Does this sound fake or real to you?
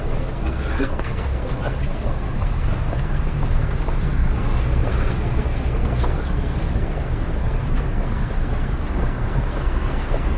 fake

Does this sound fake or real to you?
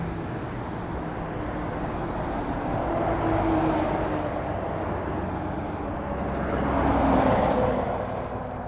real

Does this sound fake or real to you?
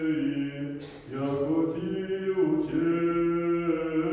real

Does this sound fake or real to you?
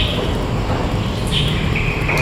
real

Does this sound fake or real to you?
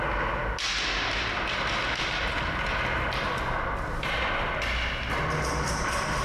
real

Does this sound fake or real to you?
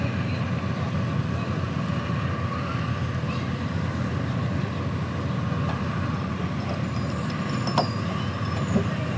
real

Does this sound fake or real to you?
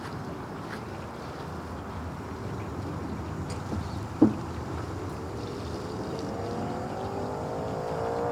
real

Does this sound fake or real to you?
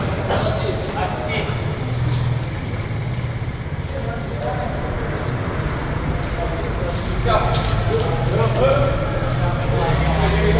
real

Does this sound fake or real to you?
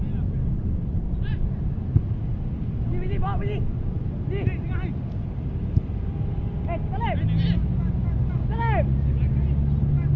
real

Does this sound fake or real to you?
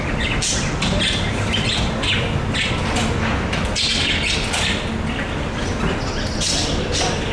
real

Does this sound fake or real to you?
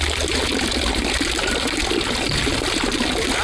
real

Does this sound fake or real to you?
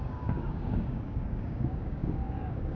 fake